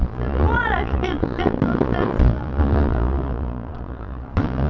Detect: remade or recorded remade